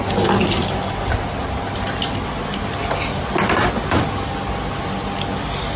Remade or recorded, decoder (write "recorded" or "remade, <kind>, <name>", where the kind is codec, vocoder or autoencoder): recorded